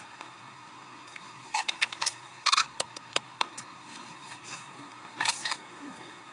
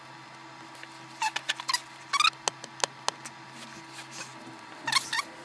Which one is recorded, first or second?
second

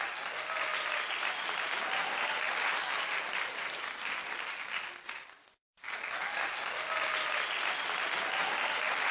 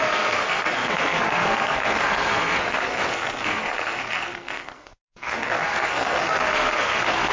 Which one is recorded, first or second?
first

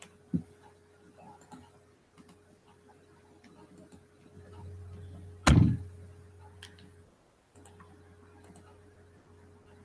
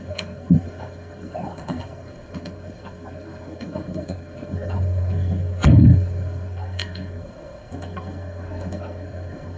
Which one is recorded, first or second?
first